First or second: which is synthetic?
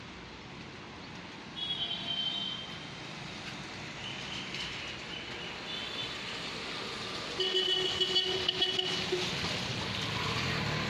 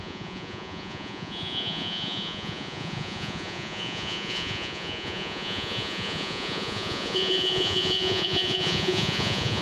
second